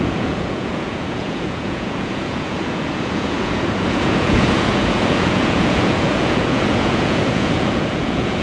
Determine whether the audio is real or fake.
fake